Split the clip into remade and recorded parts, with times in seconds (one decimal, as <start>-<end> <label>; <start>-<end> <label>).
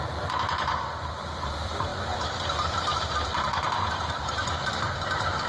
0.0-5.5 remade